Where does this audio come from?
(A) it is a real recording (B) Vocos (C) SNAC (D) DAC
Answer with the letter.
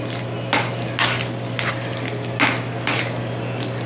A